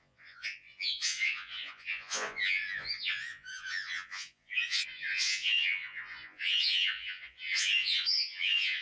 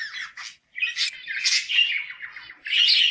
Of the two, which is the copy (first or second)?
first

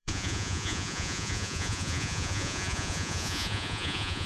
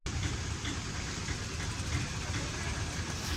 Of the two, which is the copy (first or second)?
first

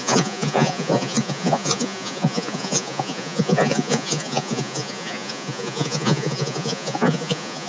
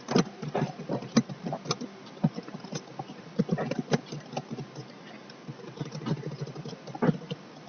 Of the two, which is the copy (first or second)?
first